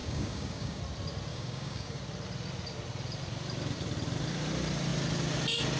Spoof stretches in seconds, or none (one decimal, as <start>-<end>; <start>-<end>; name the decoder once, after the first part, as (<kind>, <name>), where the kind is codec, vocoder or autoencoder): 0.0-0.8 (codec, DAC); 1.3-2.0